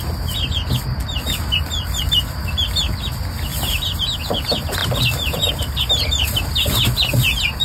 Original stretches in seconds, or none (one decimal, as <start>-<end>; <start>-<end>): 0.0-3.5; 4.2-4.8; 5.5-7.6